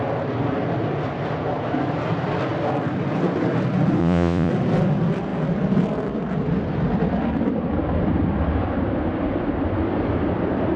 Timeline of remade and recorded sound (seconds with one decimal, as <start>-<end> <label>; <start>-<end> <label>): 0.0-4.0 recorded; 4.0-4.5 remade; 4.5-10.8 recorded